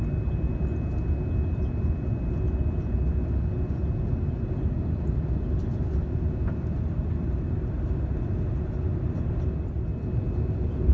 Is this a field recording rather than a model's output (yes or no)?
yes